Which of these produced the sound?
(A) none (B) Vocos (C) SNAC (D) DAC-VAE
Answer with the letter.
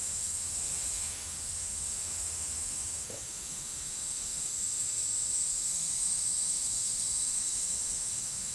D